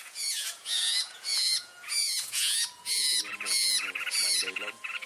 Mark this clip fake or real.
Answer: fake